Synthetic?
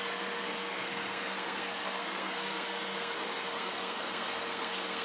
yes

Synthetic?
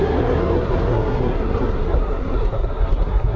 yes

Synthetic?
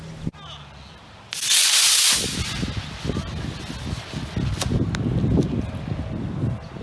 no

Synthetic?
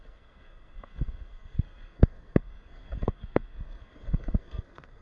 yes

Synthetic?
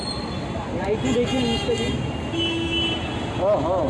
no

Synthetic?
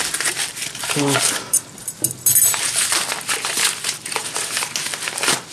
no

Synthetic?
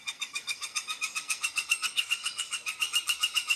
yes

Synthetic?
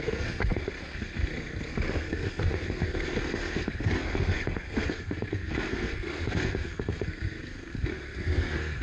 yes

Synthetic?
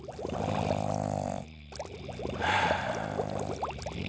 no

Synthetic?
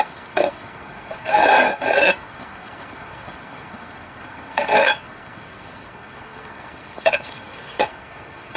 yes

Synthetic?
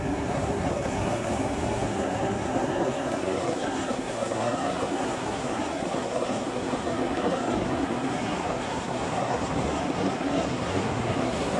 yes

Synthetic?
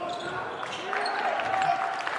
no